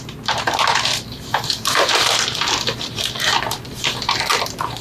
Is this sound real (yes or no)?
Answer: yes